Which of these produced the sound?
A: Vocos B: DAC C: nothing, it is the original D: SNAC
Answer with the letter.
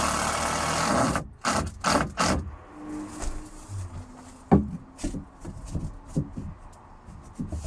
C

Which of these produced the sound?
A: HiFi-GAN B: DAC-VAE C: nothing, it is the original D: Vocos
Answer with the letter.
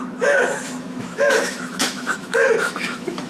B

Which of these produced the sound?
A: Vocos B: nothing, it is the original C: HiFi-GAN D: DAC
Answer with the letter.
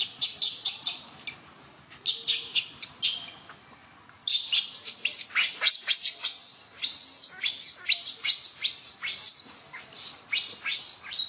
B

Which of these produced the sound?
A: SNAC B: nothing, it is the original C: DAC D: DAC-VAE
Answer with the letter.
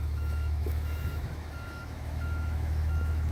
D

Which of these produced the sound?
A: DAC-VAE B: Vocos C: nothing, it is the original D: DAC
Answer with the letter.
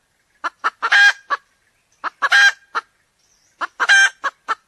C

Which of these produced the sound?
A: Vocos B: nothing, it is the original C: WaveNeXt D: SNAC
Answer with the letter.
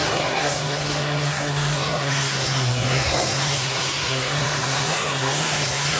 D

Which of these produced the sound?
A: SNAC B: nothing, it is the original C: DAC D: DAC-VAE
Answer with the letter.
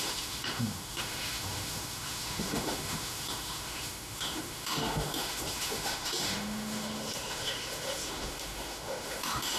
D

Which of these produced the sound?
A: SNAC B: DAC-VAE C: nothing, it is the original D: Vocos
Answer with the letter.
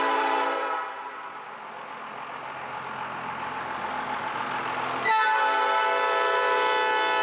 C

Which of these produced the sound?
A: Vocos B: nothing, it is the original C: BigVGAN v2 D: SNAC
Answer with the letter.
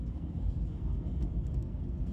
D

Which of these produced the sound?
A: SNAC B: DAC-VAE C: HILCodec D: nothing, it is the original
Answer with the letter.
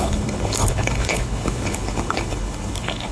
C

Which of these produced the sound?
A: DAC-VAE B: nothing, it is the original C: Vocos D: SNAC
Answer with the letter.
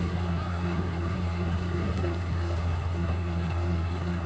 D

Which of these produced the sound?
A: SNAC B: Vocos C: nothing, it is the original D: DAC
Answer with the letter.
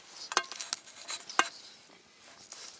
C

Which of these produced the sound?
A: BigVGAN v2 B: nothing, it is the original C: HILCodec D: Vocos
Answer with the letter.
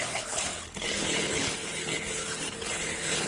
C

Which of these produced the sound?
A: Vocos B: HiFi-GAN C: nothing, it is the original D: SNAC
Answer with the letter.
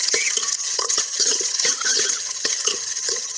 B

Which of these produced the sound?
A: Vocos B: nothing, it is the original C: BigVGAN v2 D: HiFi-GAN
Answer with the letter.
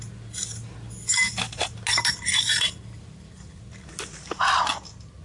B